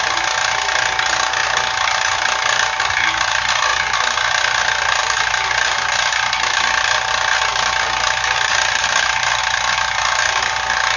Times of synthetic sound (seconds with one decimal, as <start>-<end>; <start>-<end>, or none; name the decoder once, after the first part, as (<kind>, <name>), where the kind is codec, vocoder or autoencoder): 5.0-7.1 (vocoder, BigVGAN v2); 7.5-11.0